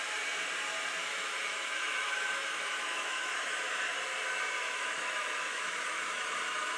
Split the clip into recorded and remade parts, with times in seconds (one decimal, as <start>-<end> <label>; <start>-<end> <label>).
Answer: 0.0-1.0 recorded; 1.0-4.0 remade; 4.0-4.6 recorded; 4.6-6.8 remade